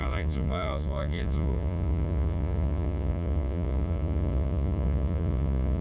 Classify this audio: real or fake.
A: fake